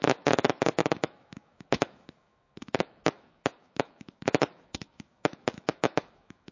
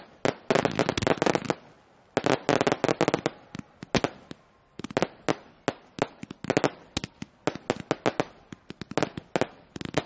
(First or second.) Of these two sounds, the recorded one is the second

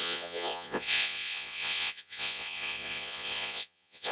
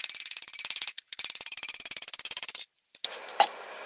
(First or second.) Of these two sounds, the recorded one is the second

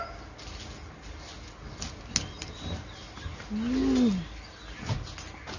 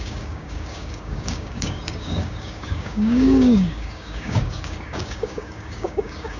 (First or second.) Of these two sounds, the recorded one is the first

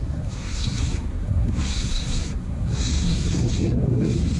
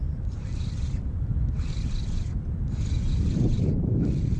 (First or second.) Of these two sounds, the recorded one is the second